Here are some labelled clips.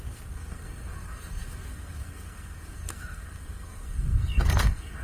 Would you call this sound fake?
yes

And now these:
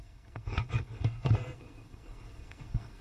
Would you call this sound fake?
yes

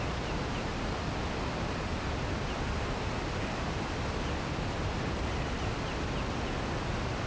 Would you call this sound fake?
no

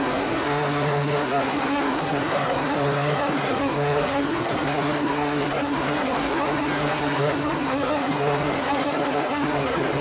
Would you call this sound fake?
yes